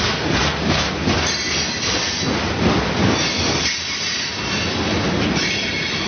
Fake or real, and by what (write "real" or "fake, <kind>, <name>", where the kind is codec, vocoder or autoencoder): real